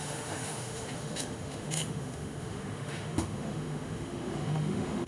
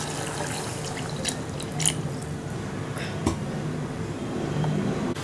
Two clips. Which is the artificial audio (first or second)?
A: first